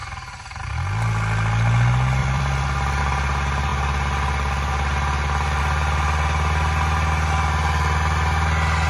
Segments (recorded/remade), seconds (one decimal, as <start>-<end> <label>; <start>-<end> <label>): 0.0-0.7 remade; 0.7-2.2 recorded; 2.2-3.0 remade; 3.0-3.7 recorded; 3.7-5.6 remade; 5.6-8.9 recorded